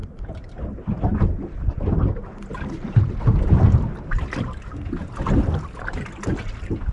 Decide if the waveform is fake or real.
real